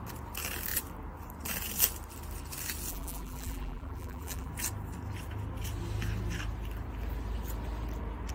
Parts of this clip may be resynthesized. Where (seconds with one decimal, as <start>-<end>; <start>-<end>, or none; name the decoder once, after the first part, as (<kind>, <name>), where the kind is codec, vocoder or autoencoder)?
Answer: 2.9-4.5 (vocoder, BigVGAN v2)